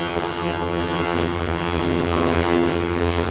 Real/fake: fake